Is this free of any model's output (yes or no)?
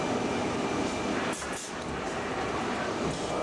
yes